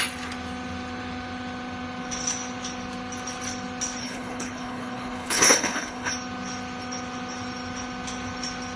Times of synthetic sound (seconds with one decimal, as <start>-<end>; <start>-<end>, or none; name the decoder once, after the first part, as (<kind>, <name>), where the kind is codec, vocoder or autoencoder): 4.0-6.1 (codec, HILCodec)